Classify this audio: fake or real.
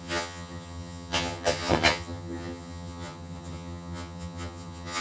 fake